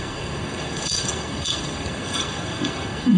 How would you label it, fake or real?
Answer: fake